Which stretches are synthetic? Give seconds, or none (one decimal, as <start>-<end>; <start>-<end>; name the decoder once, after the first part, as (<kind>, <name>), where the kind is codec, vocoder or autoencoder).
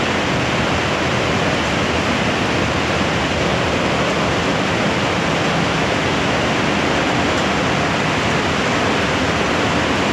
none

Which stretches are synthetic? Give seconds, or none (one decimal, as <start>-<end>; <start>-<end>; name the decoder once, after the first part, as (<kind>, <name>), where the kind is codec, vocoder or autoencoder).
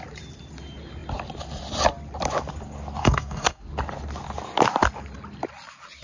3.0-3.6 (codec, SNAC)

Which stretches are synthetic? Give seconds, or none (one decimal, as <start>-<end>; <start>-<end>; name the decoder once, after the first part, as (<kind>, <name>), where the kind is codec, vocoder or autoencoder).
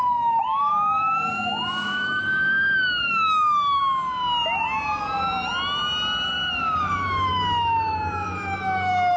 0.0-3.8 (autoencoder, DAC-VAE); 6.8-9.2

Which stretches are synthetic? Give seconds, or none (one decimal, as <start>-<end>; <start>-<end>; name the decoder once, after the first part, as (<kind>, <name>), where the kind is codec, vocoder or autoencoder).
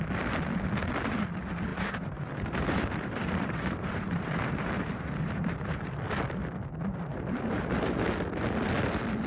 1.7-5.9 (vocoder, BigVGAN v2); 7.1-7.9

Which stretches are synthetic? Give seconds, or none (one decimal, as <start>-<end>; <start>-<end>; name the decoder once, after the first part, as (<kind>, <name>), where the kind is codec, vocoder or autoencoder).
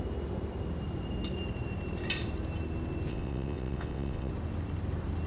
3.1-4.3 (vocoder, WaveNeXt)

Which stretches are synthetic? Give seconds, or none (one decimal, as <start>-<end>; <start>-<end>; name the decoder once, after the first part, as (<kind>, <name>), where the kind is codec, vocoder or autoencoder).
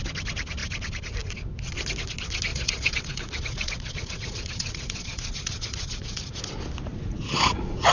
2.5-6.4 (vocoder, Vocos); 6.9-7.9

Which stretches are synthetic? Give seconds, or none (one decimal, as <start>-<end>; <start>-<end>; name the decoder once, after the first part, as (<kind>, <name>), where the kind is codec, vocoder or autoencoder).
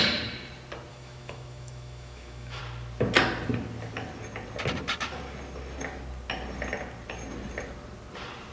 0.9-2.6 (autoencoder, DAC-VAE)